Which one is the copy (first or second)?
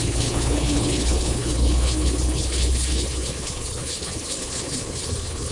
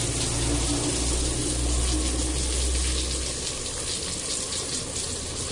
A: first